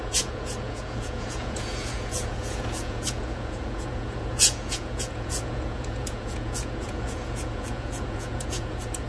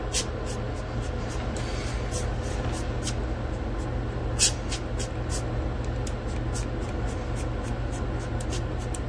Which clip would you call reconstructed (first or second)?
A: first